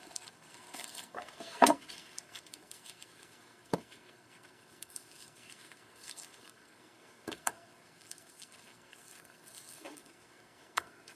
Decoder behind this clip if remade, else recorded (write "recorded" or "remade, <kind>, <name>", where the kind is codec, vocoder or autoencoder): remade, codec, SNAC